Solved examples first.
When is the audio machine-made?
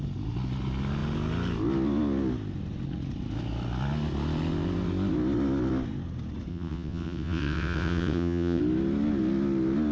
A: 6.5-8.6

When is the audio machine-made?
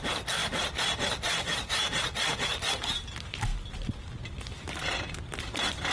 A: none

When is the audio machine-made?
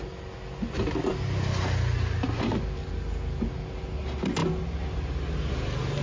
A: none